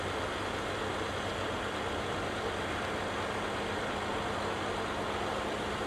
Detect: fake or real real